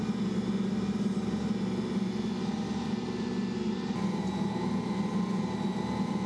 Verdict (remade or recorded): recorded